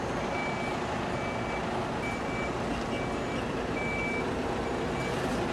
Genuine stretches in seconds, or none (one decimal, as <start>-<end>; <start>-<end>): 0.0-5.5

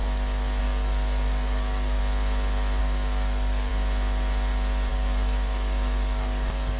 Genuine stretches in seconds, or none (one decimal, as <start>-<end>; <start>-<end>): 0.0-0.6; 2.0-2.8; 3.7-4.9

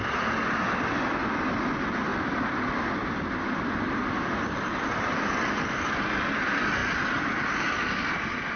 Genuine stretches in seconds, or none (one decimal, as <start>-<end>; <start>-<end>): 0.0-8.6

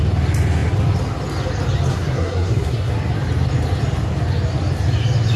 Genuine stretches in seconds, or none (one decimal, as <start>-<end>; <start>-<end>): 0.0-1.9; 2.9-5.4

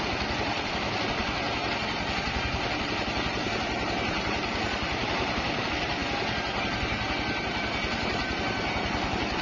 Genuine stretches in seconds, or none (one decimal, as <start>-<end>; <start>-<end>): 0.0-9.4

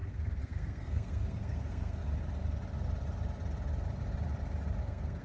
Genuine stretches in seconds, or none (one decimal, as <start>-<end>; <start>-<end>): 2.0-4.8

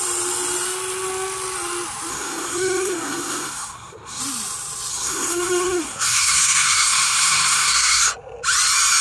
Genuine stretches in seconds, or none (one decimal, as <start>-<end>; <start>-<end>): 0.0-2.1; 4.2-4.9; 8.1-9.0

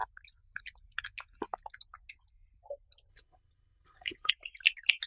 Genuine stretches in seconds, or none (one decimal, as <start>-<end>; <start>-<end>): 0.0-3.1; 4.3-5.1